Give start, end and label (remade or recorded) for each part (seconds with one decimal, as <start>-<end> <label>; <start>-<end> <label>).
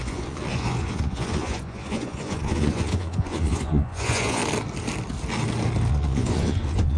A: 0.0-4.4 remade; 4.4-5.9 recorded; 5.9-7.0 remade